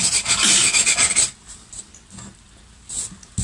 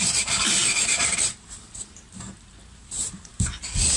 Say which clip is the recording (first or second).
first